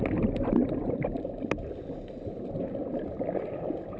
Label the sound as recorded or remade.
recorded